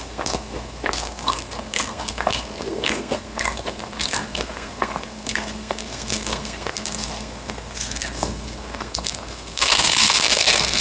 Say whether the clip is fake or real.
fake